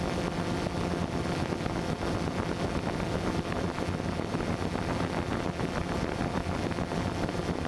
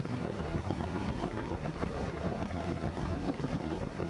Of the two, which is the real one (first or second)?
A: first